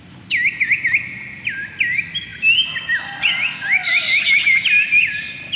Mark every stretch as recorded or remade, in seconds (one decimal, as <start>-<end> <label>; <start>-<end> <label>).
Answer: 0.0-5.6 recorded